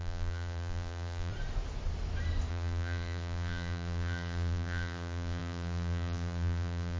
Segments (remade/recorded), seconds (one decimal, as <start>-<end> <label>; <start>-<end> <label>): 0.0-1.3 remade; 1.3-2.5 recorded; 2.5-7.0 remade